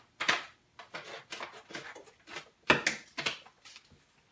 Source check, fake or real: real